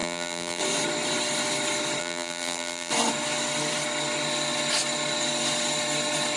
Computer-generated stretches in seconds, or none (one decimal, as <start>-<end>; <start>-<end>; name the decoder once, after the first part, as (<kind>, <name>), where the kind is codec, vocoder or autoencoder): 0.0-0.6 (vocoder, BigVGAN v2); 2.0-2.9